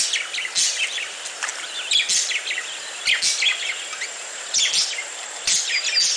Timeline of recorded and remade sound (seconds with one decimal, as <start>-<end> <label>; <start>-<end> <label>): 0.0-6.2 recorded